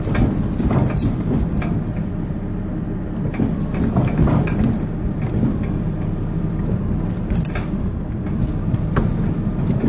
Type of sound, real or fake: fake